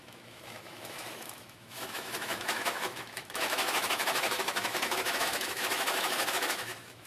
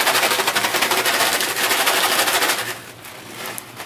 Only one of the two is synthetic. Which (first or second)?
first